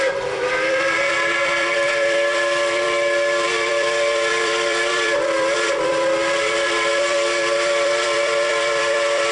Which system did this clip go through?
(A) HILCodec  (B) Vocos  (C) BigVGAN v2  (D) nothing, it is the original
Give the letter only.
C